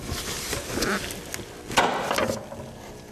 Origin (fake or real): real